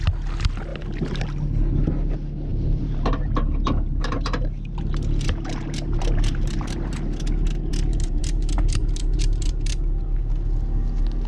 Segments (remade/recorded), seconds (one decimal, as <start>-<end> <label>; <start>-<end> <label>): 0.0-0.7 recorded; 0.7-1.2 remade; 1.2-2.5 recorded; 2.5-7.2 remade; 7.2-7.7 recorded; 7.7-9.8 remade; 9.8-11.3 recorded